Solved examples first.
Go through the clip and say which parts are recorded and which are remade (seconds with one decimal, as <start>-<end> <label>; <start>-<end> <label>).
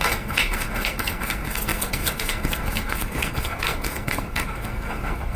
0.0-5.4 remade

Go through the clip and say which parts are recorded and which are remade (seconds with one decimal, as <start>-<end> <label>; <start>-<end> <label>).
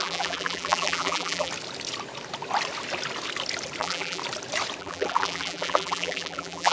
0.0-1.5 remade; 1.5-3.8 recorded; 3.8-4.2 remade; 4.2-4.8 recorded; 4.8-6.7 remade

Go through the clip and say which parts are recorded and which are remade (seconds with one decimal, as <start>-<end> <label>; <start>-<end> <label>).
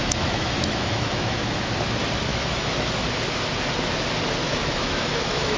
0.0-1.4 remade; 1.4-2.3 recorded; 2.3-2.9 remade; 2.9-4.4 recorded; 4.4-5.6 remade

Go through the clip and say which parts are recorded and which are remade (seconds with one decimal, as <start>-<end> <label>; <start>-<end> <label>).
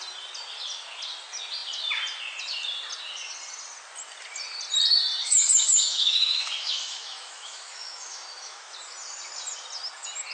0.0-5.2 recorded; 5.2-8.7 remade; 8.7-10.3 recorded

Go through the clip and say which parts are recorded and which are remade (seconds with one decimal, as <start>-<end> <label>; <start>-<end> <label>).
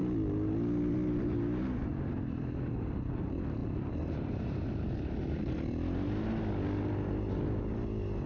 0.0-8.3 recorded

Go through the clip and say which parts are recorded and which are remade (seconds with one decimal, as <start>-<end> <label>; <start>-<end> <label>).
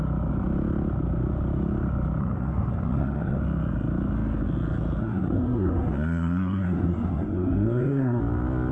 0.0-2.2 recorded; 2.2-3.4 remade; 3.4-5.0 recorded; 5.0-8.2 remade; 8.2-8.7 recorded